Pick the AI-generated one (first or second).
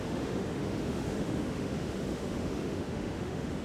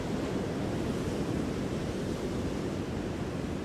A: first